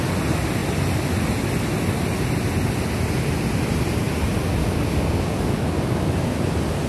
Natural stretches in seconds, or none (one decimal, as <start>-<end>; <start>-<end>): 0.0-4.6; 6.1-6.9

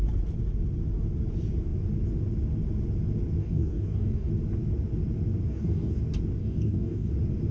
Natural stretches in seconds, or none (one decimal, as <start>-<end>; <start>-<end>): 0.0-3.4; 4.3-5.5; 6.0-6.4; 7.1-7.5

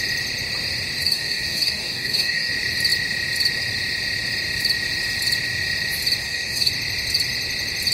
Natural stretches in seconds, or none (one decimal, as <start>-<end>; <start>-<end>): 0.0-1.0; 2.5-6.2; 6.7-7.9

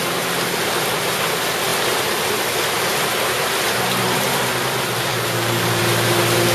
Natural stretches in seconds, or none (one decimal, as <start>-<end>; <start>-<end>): 0.0-5.1; 5.8-6.5